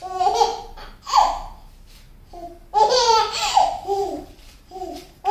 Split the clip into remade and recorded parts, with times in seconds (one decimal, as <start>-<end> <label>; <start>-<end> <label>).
0.0-2.7 recorded; 2.7-5.3 remade